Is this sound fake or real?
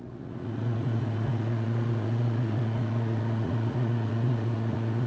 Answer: fake